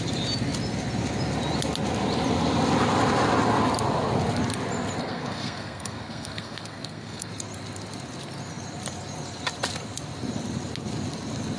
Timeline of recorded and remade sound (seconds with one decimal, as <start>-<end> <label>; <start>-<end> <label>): 0.0-5.0 recorded; 5.0-7.3 remade; 7.3-11.6 recorded